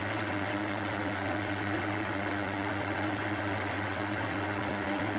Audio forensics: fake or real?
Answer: fake